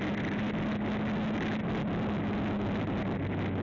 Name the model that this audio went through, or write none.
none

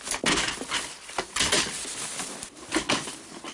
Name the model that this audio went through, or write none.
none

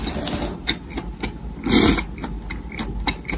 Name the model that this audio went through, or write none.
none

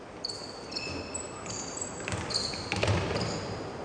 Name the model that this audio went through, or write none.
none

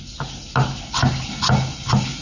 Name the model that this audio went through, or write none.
none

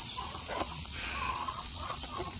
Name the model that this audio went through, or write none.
vocoder, Vocos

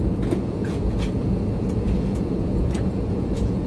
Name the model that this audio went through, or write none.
vocoder, Vocos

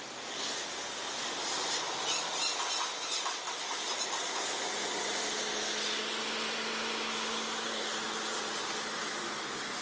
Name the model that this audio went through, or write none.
none